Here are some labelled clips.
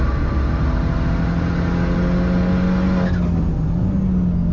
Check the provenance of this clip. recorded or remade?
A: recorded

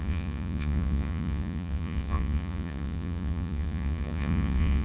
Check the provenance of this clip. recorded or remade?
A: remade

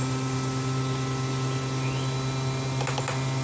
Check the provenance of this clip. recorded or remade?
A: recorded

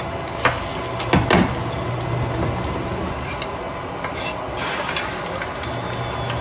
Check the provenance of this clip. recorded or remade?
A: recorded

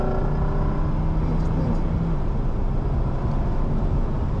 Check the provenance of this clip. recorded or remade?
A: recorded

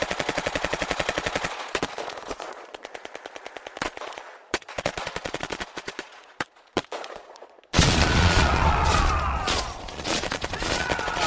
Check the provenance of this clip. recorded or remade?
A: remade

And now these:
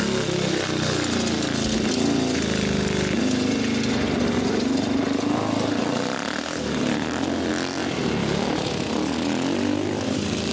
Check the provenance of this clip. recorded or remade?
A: recorded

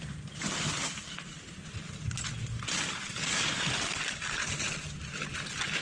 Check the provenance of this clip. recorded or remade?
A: recorded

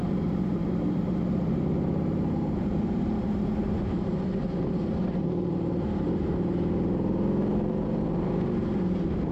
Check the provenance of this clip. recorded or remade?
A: remade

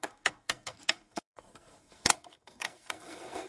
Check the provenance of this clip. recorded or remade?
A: remade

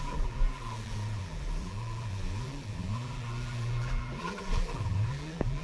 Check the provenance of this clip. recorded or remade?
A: remade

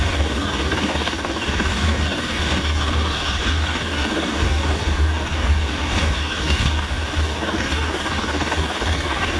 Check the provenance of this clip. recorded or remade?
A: remade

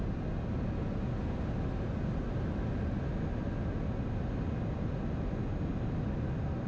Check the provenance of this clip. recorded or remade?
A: recorded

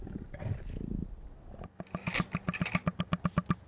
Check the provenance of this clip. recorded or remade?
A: recorded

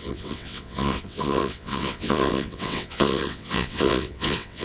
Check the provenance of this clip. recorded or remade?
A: remade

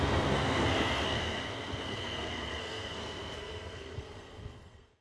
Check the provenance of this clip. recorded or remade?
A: remade